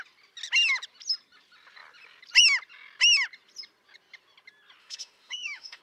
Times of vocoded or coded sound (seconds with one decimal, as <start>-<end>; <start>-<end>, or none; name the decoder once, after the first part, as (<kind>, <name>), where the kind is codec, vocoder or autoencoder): 4.8-5.8 (autoencoder, DAC-VAE)

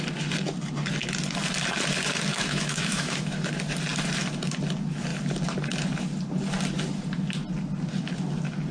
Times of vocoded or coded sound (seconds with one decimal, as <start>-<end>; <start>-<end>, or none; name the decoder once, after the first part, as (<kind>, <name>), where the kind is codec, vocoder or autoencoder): 2.3-3.5 (autoencoder, DAC-VAE)

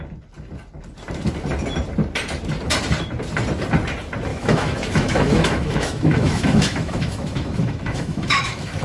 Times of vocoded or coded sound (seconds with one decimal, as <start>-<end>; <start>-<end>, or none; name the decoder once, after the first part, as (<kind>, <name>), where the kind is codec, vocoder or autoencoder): 4.3-8.8 (autoencoder, DAC-VAE)

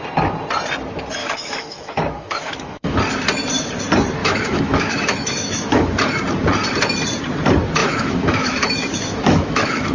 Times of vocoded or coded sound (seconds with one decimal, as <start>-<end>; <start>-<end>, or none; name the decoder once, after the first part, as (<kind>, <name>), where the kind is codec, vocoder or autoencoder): 1.2-3.0 (autoencoder, DAC-VAE); 4.2-5.9; 7.8-9.9